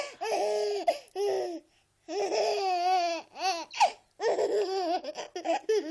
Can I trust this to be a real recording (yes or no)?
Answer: yes